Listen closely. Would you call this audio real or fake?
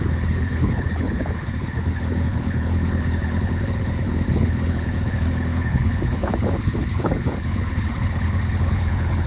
fake